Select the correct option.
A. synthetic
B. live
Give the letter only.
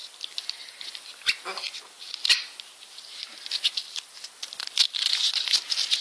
B